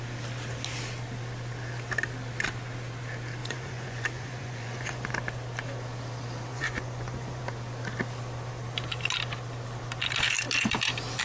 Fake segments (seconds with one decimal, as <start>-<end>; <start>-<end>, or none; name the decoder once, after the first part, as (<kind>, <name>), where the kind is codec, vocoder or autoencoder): 3.4-5.1 (vocoder, Vocos); 6.5-7.4